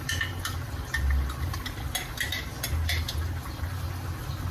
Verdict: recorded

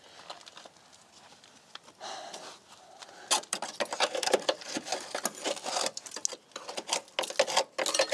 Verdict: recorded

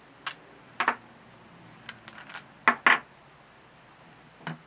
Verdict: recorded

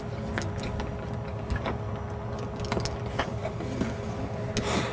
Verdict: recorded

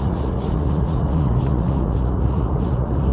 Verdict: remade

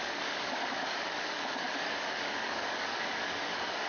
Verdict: remade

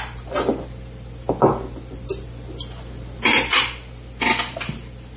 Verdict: recorded